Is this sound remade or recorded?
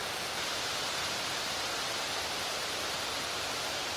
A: recorded